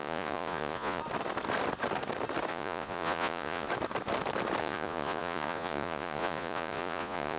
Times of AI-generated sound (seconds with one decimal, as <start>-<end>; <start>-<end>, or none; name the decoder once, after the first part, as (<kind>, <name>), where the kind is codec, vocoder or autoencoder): 0.0-1.0 (vocoder, Vocos); 2.5-3.7; 4.6-7.4